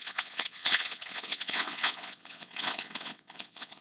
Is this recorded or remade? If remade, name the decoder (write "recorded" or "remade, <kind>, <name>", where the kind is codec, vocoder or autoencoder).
remade, vocoder, WaveNeXt